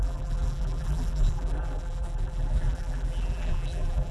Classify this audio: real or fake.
fake